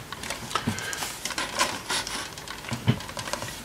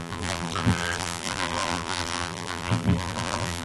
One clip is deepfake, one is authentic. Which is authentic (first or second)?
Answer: first